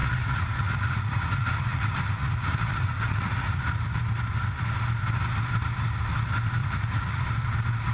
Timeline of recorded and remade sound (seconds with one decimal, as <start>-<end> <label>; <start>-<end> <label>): 0.0-3.6 remade; 3.6-6.6 recorded; 6.6-7.2 remade; 7.2-7.9 recorded